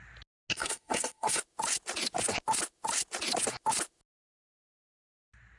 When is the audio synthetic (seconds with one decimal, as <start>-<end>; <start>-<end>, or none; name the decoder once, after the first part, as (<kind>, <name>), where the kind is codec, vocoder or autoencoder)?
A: 0.5-1.4 (codec, SNAC)